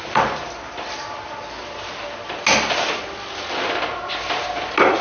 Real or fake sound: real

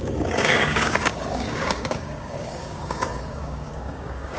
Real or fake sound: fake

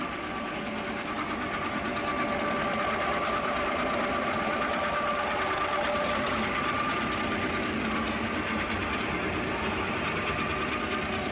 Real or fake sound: real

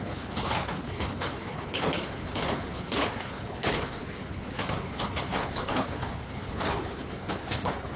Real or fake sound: fake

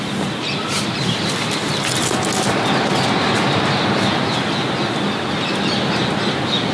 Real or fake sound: real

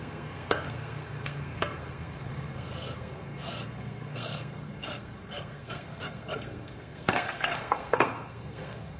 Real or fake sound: fake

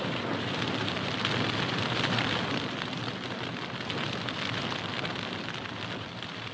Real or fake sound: fake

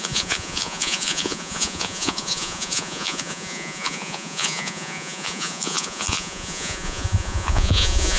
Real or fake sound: fake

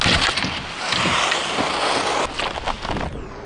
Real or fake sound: real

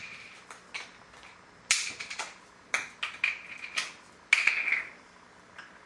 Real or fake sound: real